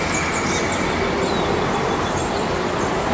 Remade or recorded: recorded